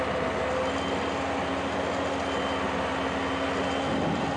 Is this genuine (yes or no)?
yes